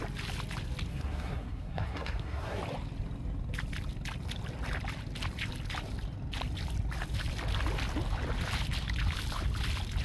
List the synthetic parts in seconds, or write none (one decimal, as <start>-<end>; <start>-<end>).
0.9-2.6